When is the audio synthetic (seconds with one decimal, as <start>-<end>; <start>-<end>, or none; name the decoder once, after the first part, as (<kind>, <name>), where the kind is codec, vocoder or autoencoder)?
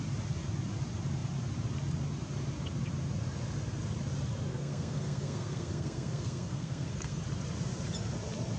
4.5-7.2 (codec, SNAC)